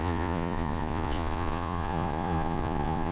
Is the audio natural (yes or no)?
no